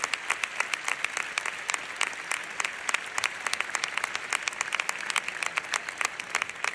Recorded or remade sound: recorded